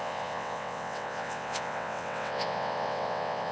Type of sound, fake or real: fake